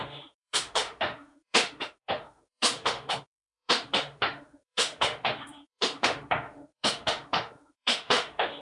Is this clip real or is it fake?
fake